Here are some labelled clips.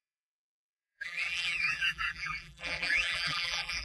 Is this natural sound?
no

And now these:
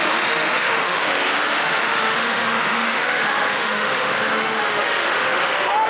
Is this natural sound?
no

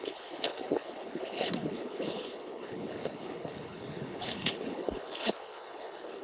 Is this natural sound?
no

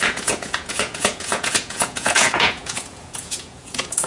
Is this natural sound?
no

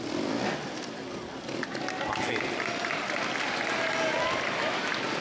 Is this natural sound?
yes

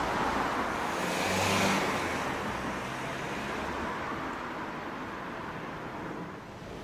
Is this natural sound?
yes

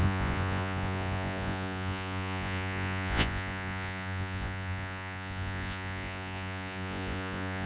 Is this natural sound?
no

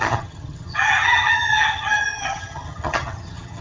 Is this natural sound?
no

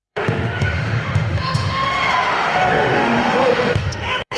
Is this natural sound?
no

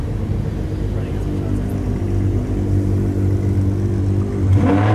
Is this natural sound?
yes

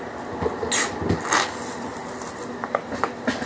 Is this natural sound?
yes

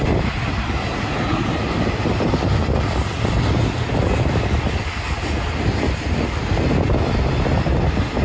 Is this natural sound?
no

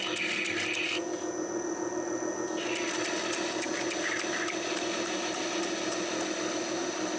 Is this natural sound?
yes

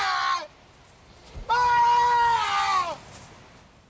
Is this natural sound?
yes